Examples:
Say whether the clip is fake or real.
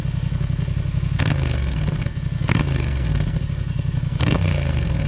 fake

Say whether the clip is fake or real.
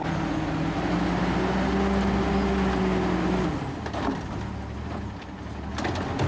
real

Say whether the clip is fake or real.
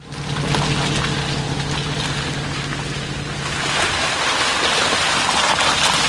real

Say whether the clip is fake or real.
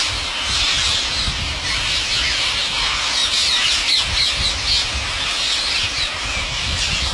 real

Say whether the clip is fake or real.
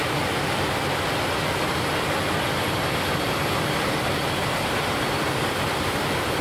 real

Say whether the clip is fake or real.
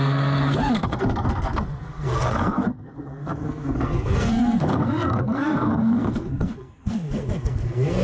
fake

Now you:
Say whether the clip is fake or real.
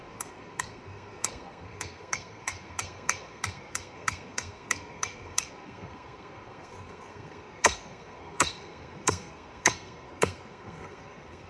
fake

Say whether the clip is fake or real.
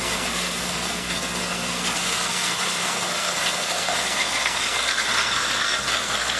fake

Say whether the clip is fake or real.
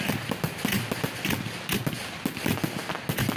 real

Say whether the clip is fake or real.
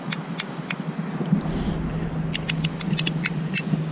real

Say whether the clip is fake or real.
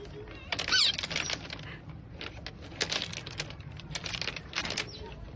real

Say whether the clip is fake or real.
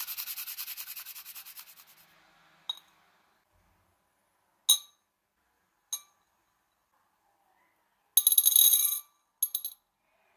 real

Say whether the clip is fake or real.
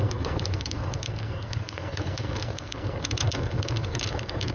fake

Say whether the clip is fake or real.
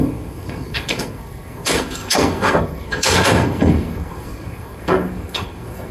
fake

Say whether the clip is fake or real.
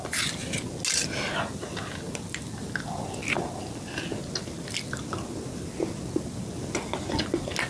real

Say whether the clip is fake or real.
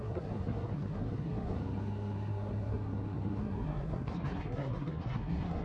fake